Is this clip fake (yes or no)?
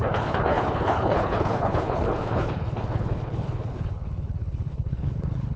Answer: yes